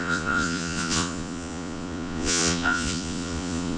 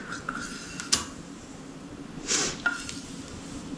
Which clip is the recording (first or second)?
second